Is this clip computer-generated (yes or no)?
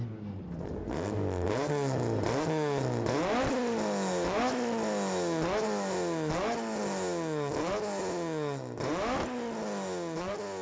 no